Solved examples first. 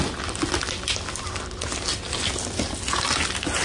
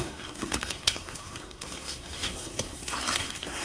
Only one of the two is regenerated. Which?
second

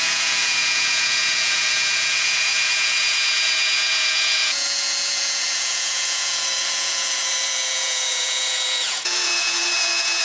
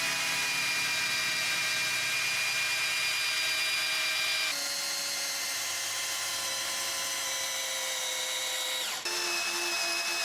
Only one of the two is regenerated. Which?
first